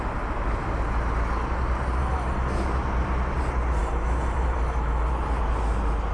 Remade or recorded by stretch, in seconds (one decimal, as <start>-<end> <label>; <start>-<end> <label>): 0.0-2.0 recorded; 2.0-2.5 remade; 2.5-3.8 recorded; 3.8-5.1 remade; 5.1-6.1 recorded